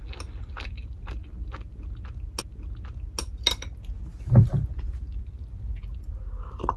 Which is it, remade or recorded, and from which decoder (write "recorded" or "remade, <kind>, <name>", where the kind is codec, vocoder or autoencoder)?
recorded